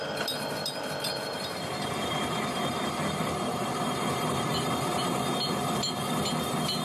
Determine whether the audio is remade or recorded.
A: recorded